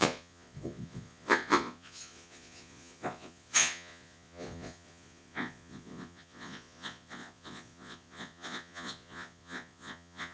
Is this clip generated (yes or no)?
yes